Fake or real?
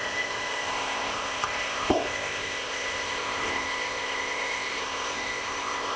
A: fake